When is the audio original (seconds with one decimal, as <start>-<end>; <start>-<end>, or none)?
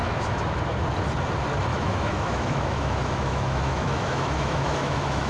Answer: 0.6-1.7